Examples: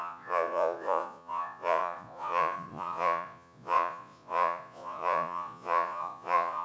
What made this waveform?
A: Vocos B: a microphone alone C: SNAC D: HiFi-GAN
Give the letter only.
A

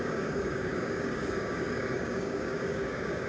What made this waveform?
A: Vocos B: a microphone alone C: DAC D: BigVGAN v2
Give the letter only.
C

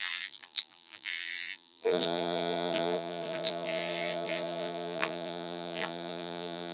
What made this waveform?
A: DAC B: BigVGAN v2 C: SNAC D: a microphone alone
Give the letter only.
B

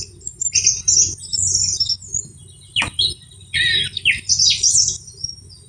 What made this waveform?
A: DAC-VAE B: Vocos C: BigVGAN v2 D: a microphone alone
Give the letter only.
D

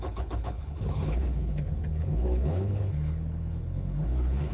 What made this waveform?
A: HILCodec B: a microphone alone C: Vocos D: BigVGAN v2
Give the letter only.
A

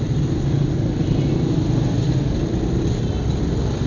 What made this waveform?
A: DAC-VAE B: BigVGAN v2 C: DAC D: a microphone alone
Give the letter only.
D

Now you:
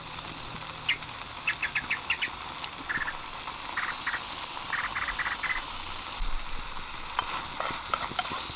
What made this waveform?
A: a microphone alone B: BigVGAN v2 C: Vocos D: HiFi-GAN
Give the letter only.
A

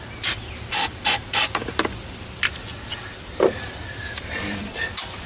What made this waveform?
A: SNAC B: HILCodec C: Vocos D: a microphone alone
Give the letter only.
D